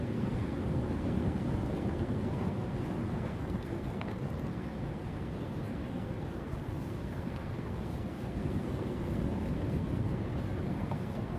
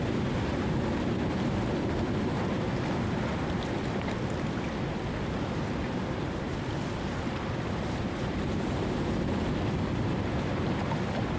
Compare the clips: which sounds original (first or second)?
second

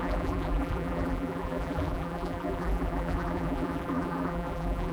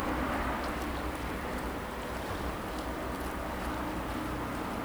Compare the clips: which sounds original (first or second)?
second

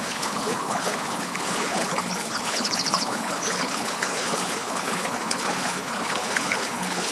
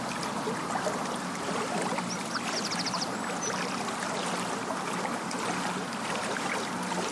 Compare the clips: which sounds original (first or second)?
second